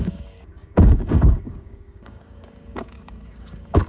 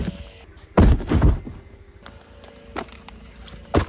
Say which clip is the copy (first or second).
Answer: first